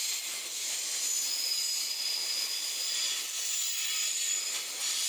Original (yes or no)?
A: yes